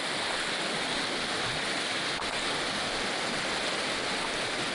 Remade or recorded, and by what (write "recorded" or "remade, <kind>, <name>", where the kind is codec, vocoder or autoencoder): recorded